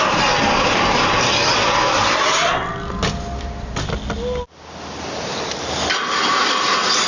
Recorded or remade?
recorded